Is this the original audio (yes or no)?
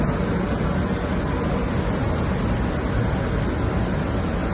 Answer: yes